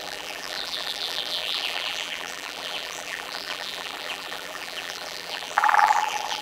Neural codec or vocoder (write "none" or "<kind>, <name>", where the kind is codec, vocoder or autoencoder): vocoder, BigVGAN v2